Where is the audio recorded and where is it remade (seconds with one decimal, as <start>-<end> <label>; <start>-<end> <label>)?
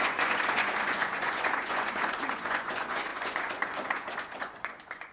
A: 0.0-5.1 remade